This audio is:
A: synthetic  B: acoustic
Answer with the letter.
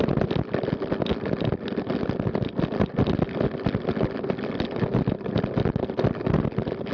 B